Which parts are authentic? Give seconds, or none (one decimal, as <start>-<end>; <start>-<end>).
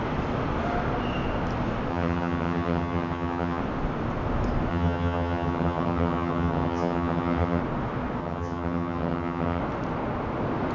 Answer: 0.0-1.9; 3.6-4.7; 7.6-8.2; 9.6-10.7